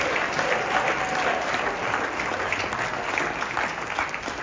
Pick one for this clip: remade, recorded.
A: recorded